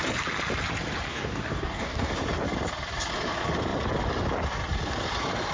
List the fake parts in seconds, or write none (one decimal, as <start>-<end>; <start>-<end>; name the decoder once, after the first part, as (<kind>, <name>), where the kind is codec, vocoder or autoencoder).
1.1-2.1 (codec, DAC)